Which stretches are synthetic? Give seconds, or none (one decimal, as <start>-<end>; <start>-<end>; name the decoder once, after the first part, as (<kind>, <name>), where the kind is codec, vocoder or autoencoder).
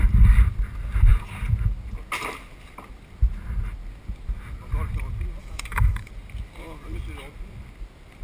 5.4-6.1 (autoencoder, DAC-VAE)